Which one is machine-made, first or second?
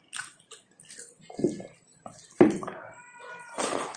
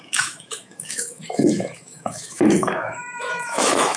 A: second